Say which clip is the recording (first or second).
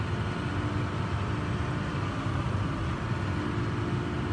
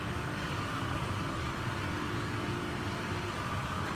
first